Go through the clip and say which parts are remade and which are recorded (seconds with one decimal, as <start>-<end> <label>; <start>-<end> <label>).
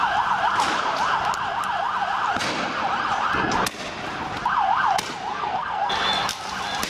0.0-5.3 recorded; 5.3-5.9 remade; 5.9-6.9 recorded